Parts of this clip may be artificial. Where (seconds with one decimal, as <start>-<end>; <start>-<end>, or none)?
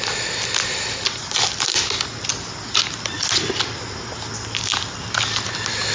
none